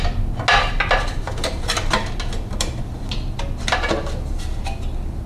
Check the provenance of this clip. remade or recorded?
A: recorded